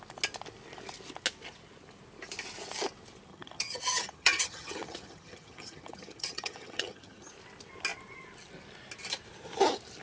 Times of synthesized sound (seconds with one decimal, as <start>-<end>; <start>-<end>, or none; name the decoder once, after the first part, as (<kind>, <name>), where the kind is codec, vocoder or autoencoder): 3.3-7.3 (vocoder, HiFi-GAN)